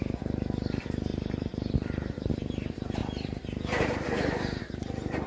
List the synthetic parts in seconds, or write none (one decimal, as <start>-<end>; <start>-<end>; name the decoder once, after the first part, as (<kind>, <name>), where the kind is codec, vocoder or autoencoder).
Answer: 1.1-2.4 (vocoder, BigVGAN v2); 3.0-4.6